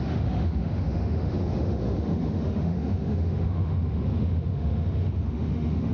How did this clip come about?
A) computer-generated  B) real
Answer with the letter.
A